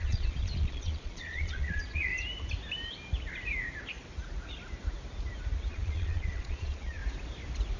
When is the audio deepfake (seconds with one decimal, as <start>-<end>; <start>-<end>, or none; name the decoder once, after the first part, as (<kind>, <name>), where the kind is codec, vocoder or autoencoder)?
0.0-2.1 (vocoder, Vocos); 5.7-7.0